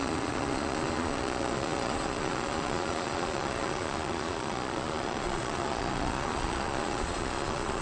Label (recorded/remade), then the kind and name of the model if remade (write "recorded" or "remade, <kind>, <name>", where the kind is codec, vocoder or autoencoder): remade, vocoder, Vocos